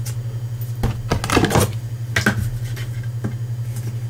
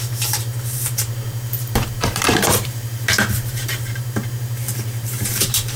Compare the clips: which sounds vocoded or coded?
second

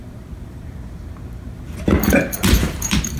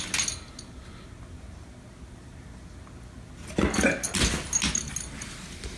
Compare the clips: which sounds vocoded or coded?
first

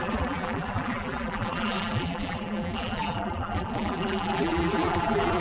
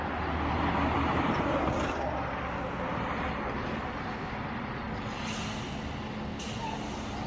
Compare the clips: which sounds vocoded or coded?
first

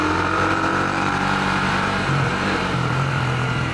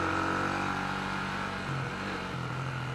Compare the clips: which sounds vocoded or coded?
first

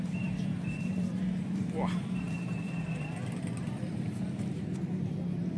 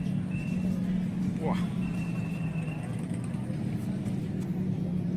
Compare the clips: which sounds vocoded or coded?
first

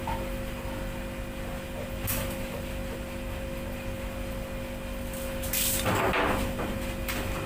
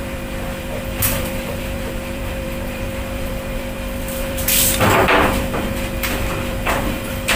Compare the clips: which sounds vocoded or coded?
second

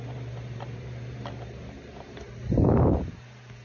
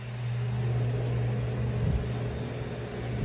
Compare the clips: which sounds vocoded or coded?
first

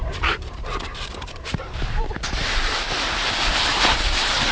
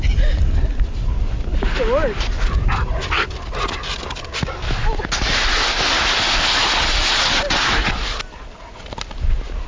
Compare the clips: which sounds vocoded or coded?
first